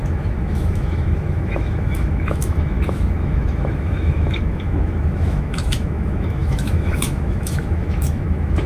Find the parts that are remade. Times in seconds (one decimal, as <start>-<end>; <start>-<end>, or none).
0.0-8.7